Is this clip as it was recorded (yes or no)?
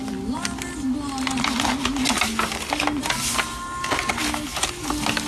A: yes